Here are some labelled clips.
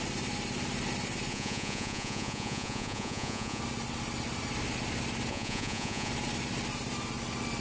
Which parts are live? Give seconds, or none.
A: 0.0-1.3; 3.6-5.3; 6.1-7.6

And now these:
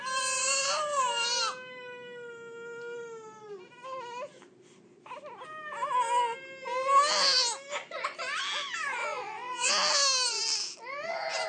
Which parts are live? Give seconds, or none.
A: 0.0-9.0; 9.7-11.5

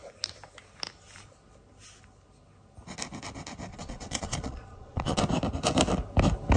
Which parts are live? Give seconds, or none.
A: 0.0-3.7; 5.2-6.6

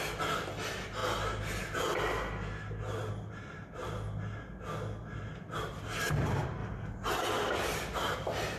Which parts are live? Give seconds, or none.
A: 0.0-8.6

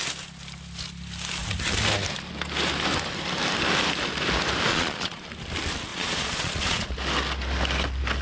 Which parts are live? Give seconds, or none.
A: 0.0-4.7; 5.2-5.9; 6.9-8.2

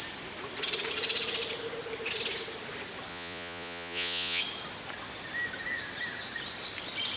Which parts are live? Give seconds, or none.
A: 0.0-3.1; 4.4-7.2